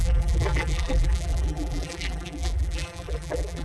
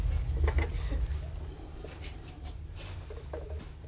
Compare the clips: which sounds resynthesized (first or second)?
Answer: first